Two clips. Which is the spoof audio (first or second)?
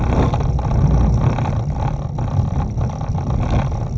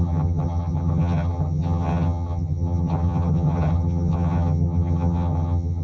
second